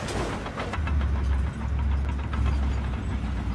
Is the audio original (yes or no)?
yes